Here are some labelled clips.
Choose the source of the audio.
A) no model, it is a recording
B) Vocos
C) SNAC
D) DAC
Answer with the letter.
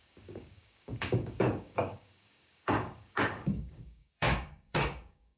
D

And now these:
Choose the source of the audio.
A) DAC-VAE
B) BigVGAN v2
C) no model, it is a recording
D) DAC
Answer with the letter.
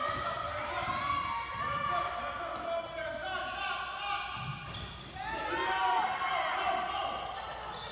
C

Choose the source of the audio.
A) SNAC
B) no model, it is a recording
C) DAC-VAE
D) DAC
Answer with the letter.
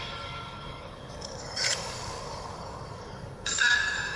D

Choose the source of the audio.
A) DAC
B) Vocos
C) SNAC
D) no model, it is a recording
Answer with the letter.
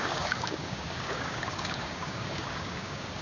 A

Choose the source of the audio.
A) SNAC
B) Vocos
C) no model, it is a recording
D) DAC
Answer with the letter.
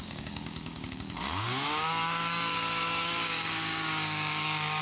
D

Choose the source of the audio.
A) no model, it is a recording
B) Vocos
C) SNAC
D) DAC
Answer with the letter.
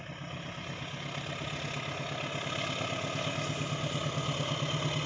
A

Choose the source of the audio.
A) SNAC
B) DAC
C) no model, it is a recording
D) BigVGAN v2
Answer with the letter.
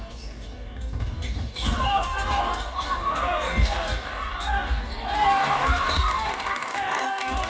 B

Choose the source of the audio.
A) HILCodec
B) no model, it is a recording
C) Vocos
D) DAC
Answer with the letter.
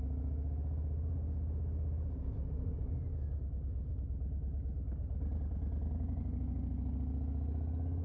B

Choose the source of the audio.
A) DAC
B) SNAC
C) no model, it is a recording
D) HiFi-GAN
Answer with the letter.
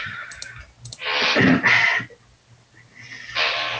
C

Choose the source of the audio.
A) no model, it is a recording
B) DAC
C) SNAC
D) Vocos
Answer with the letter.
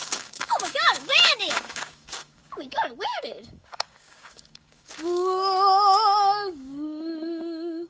B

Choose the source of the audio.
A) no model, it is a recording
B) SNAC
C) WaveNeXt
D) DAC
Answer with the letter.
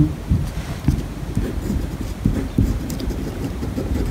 A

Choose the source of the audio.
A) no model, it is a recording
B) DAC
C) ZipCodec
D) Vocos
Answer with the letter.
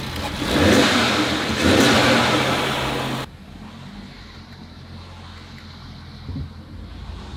A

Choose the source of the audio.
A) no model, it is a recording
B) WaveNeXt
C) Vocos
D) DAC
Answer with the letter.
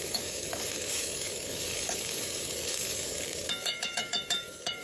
D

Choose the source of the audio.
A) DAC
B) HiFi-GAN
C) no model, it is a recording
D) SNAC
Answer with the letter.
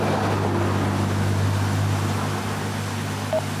C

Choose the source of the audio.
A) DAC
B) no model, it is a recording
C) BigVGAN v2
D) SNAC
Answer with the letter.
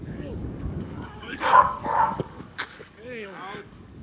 A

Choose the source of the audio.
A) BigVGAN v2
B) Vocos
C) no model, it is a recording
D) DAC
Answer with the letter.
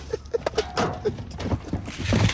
C